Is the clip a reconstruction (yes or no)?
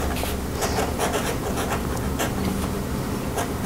no